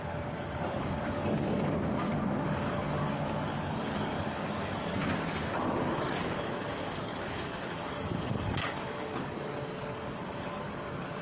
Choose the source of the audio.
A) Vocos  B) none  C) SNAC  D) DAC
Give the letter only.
D